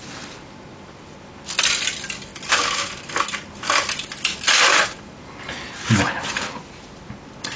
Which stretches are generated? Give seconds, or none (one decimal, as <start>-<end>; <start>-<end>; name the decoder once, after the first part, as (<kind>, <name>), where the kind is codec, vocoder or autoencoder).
none